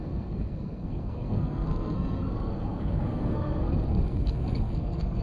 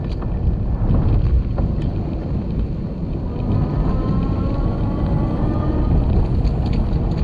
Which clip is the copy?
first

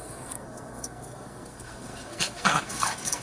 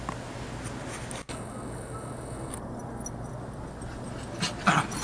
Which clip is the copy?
first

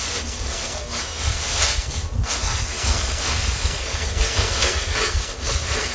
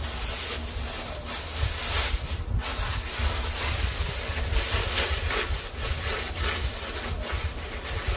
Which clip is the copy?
first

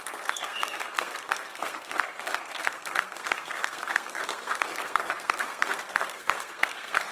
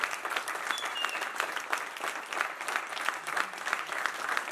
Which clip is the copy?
first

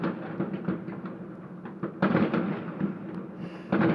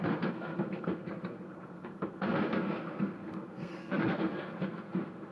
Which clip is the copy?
second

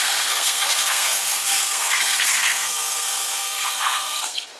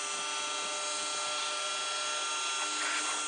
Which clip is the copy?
first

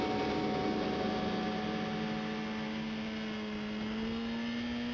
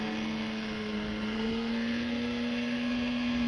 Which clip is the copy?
second